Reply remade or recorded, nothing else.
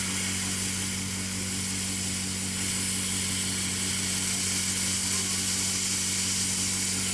recorded